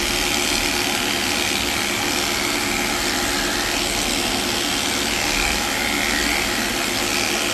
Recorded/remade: recorded